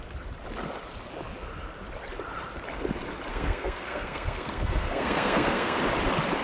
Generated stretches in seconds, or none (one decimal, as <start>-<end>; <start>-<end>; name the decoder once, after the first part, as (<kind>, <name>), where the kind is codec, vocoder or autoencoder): 3.3-5.8 (codec, SNAC)